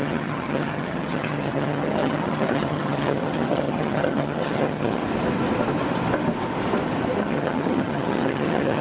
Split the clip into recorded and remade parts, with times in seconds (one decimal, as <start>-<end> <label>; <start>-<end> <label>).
0.0-5.0 remade; 5.0-7.2 recorded; 7.2-8.8 remade